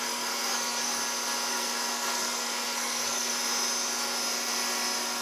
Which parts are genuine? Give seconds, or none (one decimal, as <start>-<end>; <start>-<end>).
1.0-1.5; 3.3-5.2